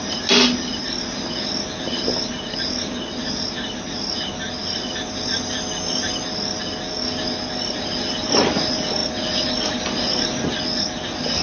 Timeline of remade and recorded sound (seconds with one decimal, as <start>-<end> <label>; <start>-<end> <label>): 0.0-11.4 recorded